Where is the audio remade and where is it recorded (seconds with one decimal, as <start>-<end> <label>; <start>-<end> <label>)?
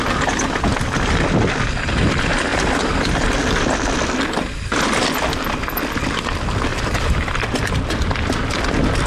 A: 0.0-2.5 recorded; 2.5-4.8 remade; 4.8-6.7 recorded; 6.7-8.7 remade; 8.7-9.1 recorded